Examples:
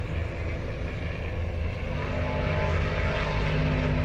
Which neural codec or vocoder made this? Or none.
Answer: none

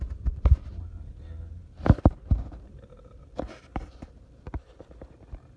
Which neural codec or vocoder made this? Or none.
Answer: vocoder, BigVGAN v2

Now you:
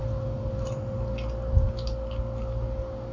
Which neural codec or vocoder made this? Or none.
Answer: none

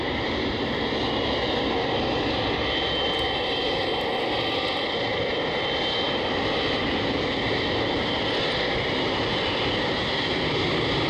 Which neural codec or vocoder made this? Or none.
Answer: none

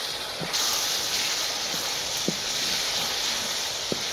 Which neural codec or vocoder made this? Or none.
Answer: none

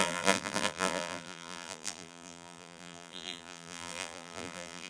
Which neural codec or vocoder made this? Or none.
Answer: vocoder, BigVGAN v2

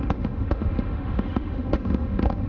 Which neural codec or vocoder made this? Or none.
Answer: autoencoder, DAC-VAE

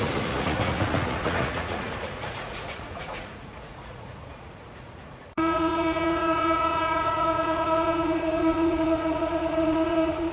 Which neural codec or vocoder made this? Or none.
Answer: vocoder, Vocos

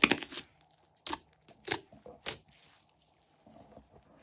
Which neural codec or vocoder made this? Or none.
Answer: none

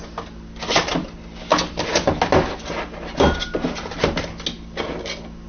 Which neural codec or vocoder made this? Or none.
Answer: none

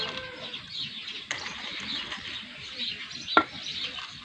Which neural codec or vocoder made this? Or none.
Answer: none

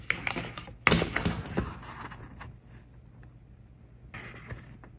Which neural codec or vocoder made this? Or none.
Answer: none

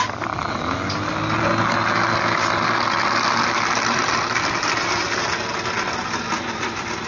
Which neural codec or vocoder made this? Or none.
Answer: none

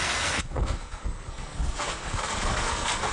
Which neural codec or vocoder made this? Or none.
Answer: codec, SNAC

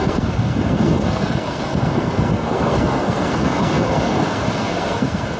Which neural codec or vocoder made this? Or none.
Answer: codec, SNAC